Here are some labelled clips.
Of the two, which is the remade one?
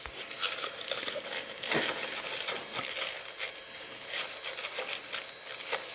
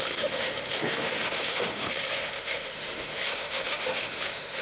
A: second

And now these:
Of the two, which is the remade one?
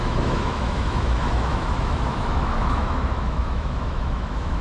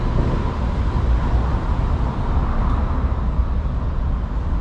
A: first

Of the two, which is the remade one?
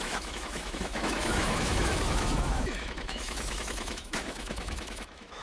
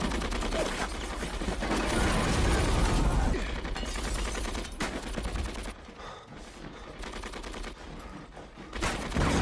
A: first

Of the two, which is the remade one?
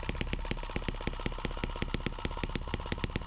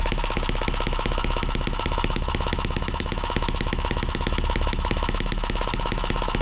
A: second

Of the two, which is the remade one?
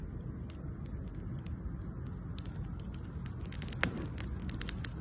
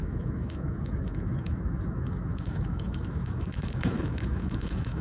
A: second